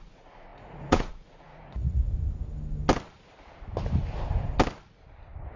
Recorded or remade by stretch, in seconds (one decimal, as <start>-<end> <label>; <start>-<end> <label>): 0.0-2.0 remade; 2.0-5.6 recorded